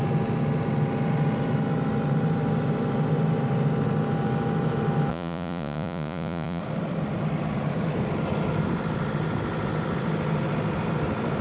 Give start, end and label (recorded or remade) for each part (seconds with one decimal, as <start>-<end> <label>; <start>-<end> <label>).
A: 0.0-5.1 recorded; 5.1-6.6 remade; 6.6-11.4 recorded